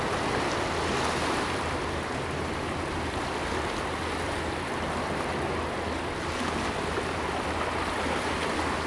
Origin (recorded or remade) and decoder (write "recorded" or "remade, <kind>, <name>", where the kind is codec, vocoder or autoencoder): recorded